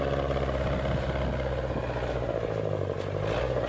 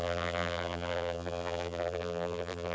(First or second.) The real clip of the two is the first